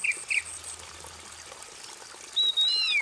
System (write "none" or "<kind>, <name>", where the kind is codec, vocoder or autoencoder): none